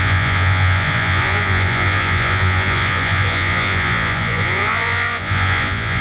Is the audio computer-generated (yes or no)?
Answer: yes